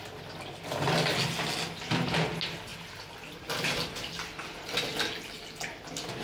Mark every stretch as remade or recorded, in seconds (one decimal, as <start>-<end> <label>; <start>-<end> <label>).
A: 0.0-6.2 recorded